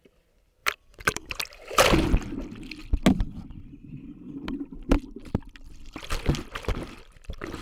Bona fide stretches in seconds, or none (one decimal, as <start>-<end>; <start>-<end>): 0.0-0.6; 1.4-7.6